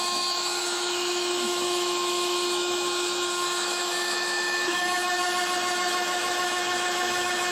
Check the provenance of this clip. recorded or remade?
remade